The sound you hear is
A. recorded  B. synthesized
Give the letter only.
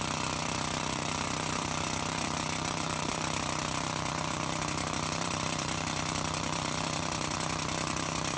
B